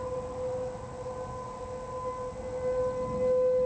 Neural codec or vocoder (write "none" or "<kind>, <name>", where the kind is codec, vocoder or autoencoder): none